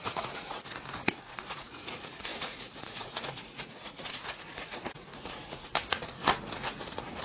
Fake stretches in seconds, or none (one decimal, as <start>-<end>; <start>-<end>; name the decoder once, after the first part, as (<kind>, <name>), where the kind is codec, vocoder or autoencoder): 0.0-7.2 (vocoder, Vocos)